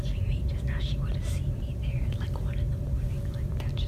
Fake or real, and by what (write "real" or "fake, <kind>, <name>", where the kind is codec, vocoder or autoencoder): real